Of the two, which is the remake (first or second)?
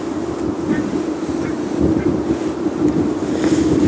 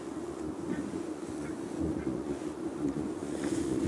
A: second